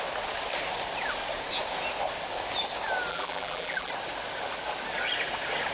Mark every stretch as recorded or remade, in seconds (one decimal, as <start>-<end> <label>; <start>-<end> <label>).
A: 0.0-3.1 recorded; 3.1-3.9 remade; 3.9-5.7 recorded

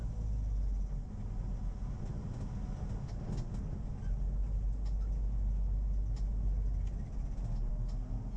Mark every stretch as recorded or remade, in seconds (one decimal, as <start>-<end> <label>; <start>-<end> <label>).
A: 0.0-8.4 recorded

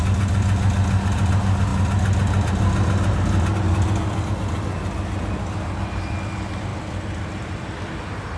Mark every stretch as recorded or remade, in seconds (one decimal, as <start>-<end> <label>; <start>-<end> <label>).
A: 0.0-6.7 recorded; 6.7-8.4 remade

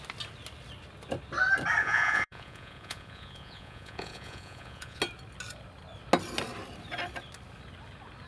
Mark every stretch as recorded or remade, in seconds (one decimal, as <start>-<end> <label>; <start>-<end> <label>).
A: 0.0-1.8 recorded; 1.8-5.0 remade; 5.0-8.3 recorded

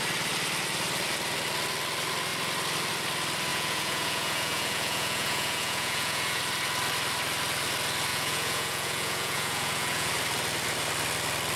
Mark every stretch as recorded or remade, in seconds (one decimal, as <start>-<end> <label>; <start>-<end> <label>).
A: 0.0-3.5 recorded; 3.5-6.4 remade; 6.4-8.1 recorded; 8.1-10.1 remade; 10.1-11.6 recorded